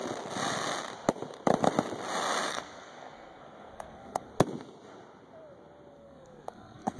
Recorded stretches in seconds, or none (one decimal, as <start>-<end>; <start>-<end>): 0.0-2.5; 4.3-5.9